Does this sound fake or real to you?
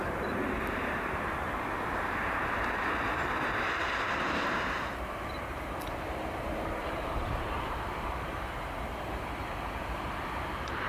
fake